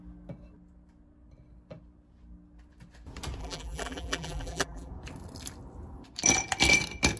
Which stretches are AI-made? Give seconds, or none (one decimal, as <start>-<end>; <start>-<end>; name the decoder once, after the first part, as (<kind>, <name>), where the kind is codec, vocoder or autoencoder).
3.4-4.9 (vocoder, BigVGAN v2)